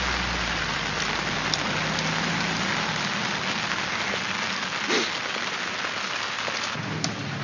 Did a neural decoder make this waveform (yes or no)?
no